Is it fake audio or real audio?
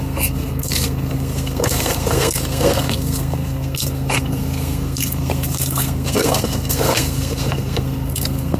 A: fake